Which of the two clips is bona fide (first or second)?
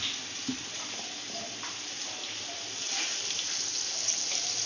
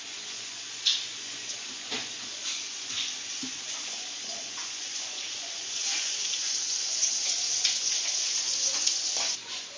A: first